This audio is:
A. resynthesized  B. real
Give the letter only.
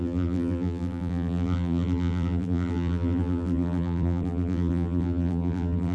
A